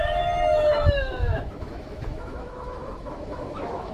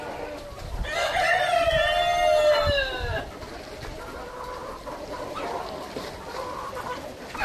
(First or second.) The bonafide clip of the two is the second